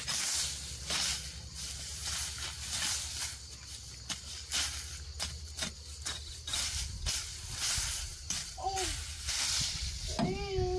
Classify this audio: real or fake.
real